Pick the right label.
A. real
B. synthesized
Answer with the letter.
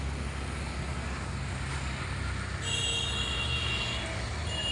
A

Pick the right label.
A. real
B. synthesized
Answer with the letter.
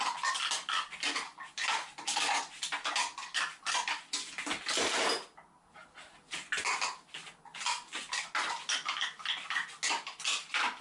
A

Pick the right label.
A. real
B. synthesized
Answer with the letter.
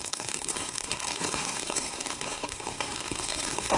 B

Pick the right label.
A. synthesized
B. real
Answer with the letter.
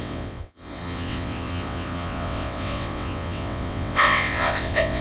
A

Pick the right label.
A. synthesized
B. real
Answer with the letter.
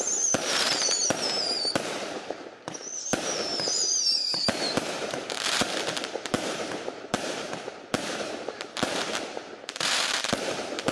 A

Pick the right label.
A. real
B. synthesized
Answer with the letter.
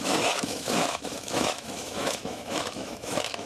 B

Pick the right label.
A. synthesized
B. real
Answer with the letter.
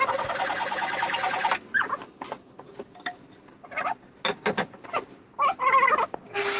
B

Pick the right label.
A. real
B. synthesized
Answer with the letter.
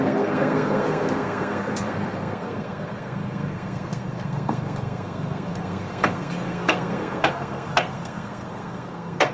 B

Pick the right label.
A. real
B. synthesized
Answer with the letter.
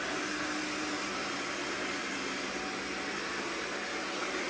A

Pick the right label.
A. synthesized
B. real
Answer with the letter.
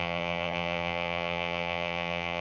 A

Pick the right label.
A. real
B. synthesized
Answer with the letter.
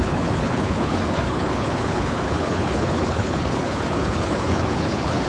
B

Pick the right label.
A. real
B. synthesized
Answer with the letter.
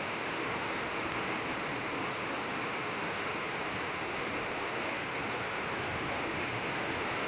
B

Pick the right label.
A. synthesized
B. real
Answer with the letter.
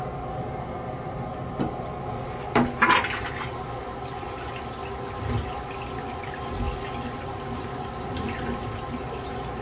B